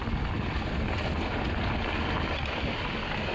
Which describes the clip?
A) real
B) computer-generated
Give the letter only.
A